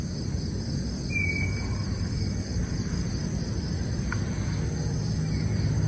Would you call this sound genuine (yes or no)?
yes